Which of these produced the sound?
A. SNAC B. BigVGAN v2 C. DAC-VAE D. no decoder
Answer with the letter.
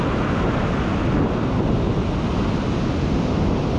D